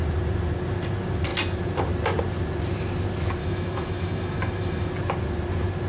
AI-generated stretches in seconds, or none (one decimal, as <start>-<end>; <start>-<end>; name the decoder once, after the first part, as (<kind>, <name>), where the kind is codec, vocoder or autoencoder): 3.4-4.9 (autoencoder, DAC-VAE)